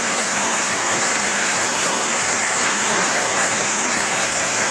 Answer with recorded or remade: remade